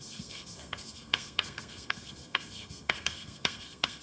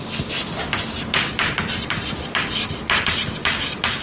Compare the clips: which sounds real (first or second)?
second